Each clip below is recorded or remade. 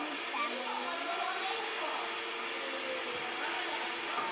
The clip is recorded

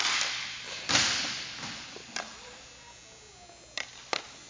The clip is recorded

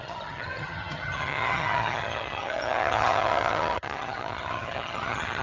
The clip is remade